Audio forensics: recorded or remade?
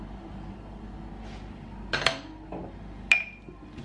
recorded